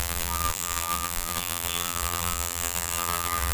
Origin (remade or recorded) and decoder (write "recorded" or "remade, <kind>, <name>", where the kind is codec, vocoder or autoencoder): remade, vocoder, BigVGAN v2